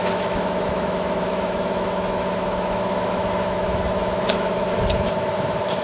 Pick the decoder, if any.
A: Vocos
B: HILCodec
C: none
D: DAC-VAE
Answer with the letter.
D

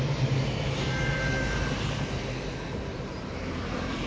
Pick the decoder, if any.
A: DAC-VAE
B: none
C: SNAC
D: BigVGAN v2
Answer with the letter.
D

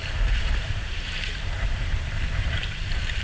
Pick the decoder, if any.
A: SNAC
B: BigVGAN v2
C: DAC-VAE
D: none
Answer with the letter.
B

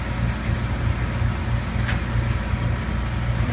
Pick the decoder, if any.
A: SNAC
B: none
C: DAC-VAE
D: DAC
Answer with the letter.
B